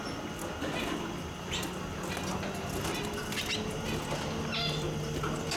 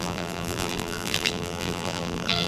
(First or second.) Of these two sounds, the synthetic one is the second